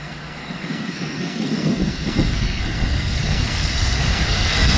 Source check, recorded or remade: remade